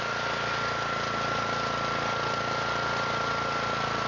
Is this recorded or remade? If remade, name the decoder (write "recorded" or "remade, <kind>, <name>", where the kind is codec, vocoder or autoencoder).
recorded